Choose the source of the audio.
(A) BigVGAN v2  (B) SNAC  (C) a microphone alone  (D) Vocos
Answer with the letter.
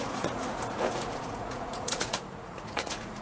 D